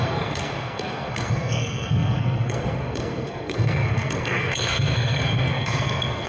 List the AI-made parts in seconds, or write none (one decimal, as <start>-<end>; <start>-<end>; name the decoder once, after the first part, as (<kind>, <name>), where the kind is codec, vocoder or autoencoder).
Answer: 0.0-6.3 (codec, SNAC)